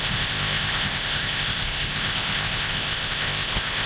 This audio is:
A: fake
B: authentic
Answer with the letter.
A